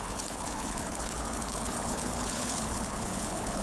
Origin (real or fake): fake